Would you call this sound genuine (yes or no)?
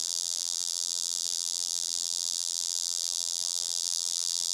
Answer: no